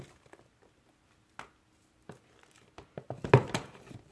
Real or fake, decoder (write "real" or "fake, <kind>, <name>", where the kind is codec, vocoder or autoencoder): real